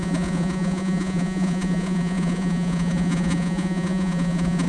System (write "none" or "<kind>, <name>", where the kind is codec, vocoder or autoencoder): vocoder, Vocos